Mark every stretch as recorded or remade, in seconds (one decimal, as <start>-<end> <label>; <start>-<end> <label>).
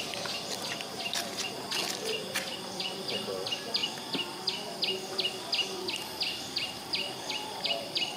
0.0-1.7 remade; 1.7-2.5 recorded; 2.5-3.8 remade; 3.8-6.5 recorded; 6.5-8.2 remade